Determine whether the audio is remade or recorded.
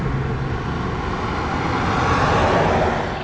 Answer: recorded